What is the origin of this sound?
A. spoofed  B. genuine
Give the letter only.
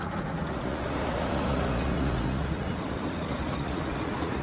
A